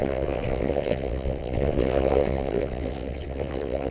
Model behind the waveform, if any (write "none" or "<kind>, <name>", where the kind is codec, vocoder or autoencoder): vocoder, WaveNeXt